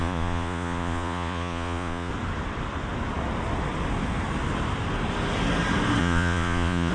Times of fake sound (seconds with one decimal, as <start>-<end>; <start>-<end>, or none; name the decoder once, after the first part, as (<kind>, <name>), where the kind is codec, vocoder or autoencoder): 0.0-2.1 (vocoder, Vocos); 6.0-6.9